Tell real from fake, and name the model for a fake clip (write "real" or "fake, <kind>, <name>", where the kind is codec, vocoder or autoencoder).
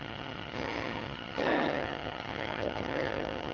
fake, vocoder, HiFi-GAN